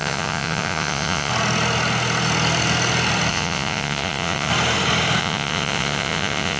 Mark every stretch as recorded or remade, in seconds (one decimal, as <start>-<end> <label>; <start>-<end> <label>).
0.0-1.3 remade; 1.3-3.3 recorded; 3.3-4.5 remade; 4.5-5.2 recorded; 5.2-6.6 remade